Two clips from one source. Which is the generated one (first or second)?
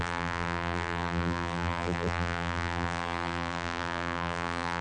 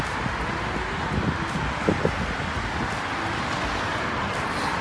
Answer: first